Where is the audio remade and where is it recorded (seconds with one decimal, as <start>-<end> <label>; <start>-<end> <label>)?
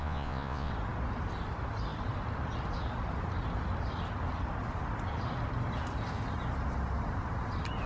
0.0-0.7 remade; 0.7-7.9 recorded